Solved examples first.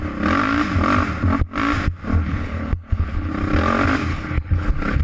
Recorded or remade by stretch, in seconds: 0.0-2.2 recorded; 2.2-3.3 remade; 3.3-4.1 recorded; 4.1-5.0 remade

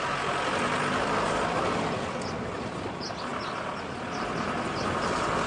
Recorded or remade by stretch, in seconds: 0.0-5.5 recorded

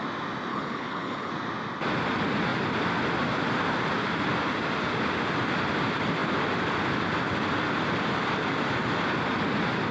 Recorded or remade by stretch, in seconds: 0.0-0.5 recorded; 0.5-1.3 remade; 1.3-9.9 recorded

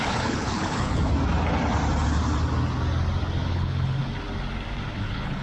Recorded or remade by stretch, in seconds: 0.0-1.0 remade; 1.0-3.5 recorded; 3.5-4.0 remade; 4.0-5.0 recorded; 5.0-5.4 remade

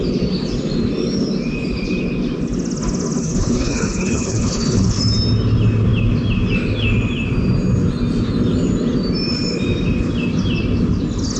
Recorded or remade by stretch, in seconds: 0.0-3.2 recorded; 3.2-5.0 remade; 5.0-11.4 recorded

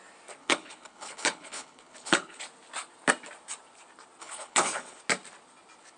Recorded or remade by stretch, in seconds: 0.0-0.4 recorded; 0.4-2.4 remade; 2.4-4.2 recorded; 4.2-5.0 remade; 5.0-6.0 recorded

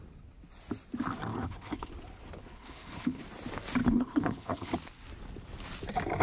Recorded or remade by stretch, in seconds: 0.0-1.3 recorded; 1.3-1.9 remade; 1.9-2.4 recorded; 2.4-3.2 remade; 3.2-3.8 recorded; 3.8-4.7 remade; 4.7-6.2 recorded